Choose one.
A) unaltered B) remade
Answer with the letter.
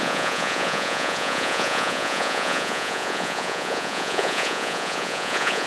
B